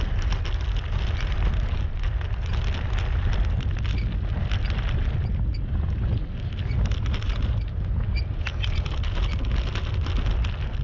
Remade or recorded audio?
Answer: recorded